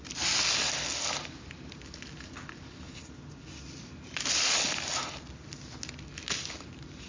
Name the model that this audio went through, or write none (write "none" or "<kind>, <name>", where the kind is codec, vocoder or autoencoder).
none